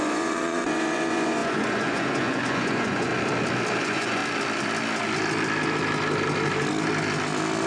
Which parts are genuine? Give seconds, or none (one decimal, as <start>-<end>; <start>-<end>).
3.1-3.8; 4.2-7.7

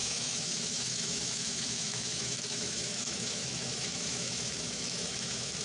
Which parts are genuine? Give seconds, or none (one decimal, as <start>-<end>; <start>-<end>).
none

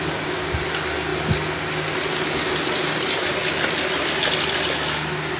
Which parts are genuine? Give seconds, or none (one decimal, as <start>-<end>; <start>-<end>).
0.0-5.4

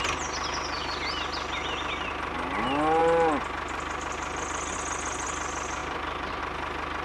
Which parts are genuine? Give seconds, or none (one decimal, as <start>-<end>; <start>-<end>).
0.0-5.8; 6.4-7.0

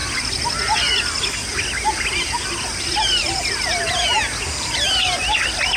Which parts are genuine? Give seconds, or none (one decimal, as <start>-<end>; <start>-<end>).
0.0-5.8

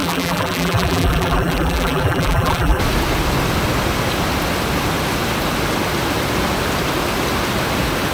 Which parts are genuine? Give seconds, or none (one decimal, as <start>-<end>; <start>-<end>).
2.8-8.1

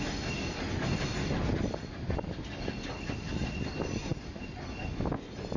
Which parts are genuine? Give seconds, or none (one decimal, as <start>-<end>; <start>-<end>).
0.0-5.6